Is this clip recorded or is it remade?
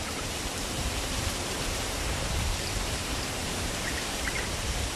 remade